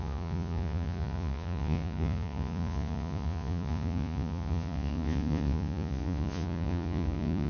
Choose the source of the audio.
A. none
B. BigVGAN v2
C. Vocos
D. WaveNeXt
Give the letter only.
C